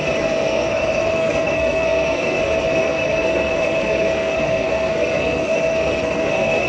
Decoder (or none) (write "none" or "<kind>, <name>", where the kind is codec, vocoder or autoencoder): codec, SNAC